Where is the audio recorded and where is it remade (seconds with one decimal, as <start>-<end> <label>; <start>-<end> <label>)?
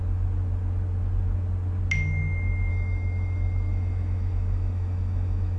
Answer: 0.0-2.7 recorded; 2.7-5.6 remade